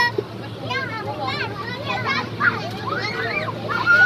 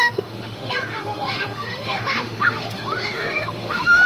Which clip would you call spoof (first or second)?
second